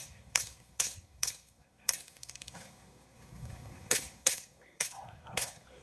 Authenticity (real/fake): fake